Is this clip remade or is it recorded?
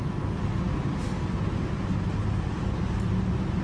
recorded